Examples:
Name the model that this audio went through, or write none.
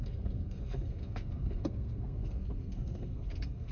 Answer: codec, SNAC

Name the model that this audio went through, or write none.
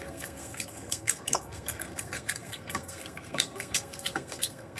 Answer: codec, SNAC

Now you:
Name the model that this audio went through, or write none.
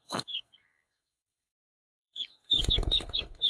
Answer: codec, SNAC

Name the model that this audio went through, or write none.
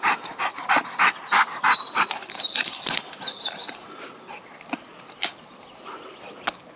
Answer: none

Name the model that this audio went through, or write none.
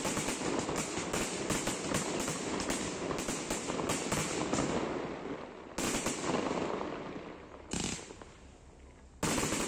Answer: none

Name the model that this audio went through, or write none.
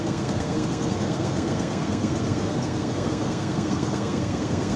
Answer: codec, SNAC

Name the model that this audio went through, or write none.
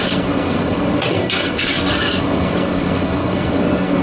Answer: codec, SNAC